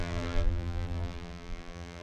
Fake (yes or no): yes